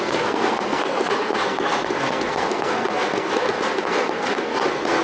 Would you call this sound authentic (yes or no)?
no